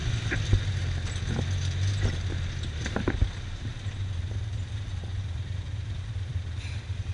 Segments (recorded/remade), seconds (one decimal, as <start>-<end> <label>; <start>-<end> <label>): 0.0-5.1 recorded; 5.1-6.6 remade; 6.6-7.1 recorded